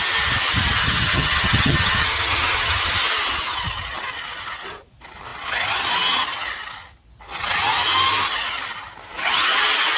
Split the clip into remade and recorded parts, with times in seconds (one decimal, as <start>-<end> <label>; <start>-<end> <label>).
0.0-0.8 recorded; 0.8-2.9 remade; 2.9-10.0 recorded